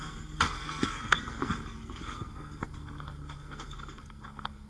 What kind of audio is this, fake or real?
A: fake